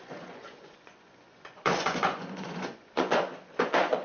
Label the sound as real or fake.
fake